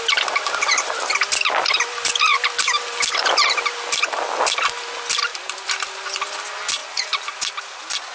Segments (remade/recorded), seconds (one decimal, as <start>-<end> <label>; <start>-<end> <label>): 0.0-5.3 recorded; 5.3-6.2 remade; 6.2-6.8 recorded; 6.8-7.4 remade; 7.4-8.1 recorded